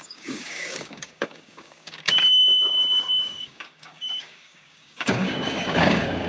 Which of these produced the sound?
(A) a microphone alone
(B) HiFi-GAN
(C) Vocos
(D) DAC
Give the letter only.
D